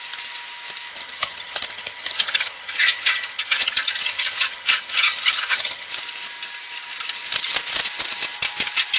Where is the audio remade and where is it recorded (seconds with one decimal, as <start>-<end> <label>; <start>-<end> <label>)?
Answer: 0.0-0.9 recorded; 0.9-5.9 remade; 5.9-9.0 recorded